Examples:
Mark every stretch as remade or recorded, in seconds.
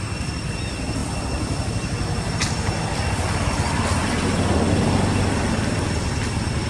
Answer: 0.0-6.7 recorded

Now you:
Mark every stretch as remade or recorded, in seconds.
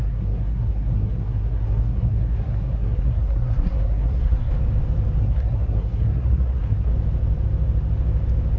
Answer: 0.0-4.5 remade; 4.5-5.2 recorded; 5.2-6.9 remade; 6.9-8.6 recorded